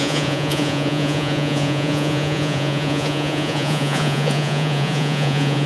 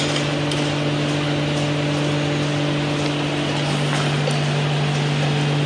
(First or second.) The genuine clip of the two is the second